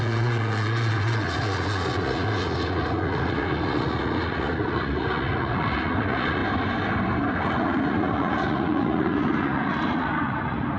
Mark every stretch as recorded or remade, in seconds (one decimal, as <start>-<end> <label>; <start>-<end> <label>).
0.0-6.4 remade; 6.4-7.4 recorded; 7.4-10.8 remade